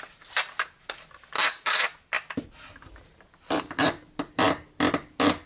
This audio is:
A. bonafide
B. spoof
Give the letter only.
A